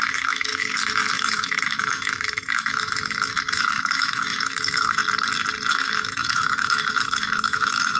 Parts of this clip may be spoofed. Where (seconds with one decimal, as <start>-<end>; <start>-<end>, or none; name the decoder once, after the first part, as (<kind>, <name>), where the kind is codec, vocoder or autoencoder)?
0.0-5.0 (autoencoder, DAC-VAE); 5.7-8.0